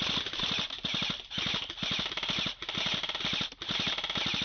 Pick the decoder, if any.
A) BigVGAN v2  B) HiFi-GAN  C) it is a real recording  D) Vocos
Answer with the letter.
C